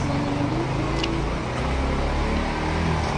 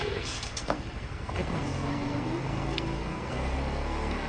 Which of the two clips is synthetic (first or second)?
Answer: second